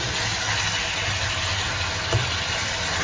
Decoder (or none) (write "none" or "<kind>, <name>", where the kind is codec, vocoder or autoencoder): none